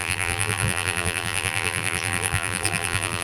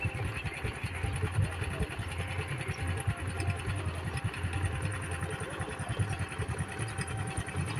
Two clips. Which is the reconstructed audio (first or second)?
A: first